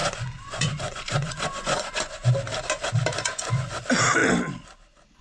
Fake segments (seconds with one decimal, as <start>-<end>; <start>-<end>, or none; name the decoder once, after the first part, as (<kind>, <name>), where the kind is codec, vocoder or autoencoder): 0.0-2.3 (vocoder, Vocos); 3.1-3.8